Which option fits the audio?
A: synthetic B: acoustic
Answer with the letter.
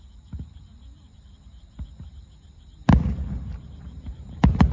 A